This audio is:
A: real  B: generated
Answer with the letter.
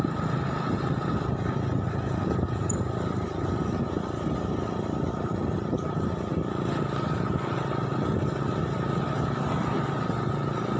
A